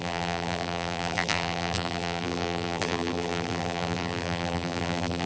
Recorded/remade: remade